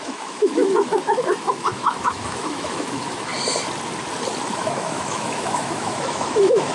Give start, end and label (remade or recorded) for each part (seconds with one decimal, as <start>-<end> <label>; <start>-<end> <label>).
0.0-3.3 remade; 3.3-4.5 recorded; 4.5-6.7 remade